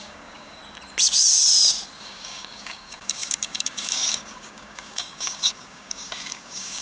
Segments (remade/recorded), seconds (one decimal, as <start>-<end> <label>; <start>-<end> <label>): 0.0-0.6 remade; 0.6-2.0 recorded; 2.0-6.8 remade